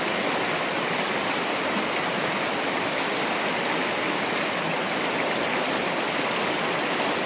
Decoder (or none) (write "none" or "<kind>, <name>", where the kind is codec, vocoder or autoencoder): none